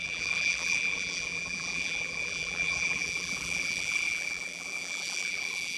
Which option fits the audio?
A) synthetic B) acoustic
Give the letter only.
A